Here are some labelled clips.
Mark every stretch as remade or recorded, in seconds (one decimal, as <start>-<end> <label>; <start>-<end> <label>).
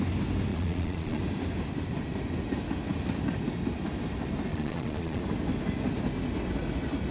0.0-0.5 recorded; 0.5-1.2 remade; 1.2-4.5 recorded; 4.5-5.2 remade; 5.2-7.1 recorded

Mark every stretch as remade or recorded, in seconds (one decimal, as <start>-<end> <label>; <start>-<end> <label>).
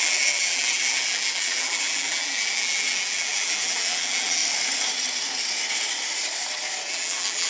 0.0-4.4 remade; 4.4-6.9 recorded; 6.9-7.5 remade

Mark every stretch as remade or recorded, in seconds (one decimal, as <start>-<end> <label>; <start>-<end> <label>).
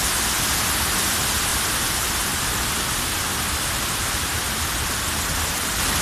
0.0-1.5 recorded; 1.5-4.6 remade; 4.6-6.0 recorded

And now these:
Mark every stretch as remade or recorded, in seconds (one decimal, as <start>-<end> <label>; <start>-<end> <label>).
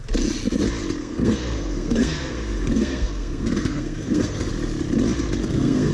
0.0-1.0 recorded; 1.0-4.5 remade; 4.5-5.4 recorded; 5.4-5.9 remade